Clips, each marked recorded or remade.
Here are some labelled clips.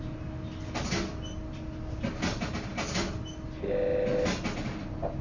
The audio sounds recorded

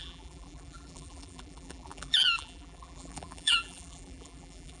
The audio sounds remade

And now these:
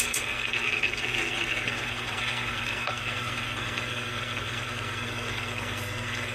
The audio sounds remade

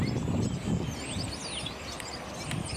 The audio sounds recorded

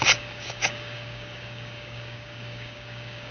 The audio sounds remade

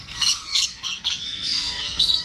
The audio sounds remade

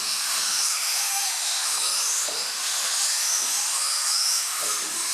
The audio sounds remade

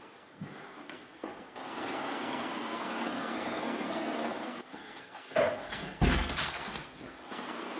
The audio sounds remade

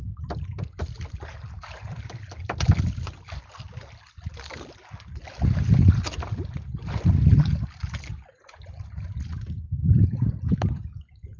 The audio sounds recorded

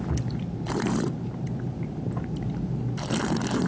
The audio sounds recorded